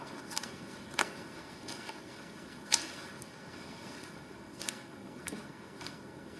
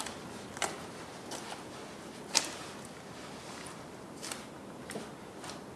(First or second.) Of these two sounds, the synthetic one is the first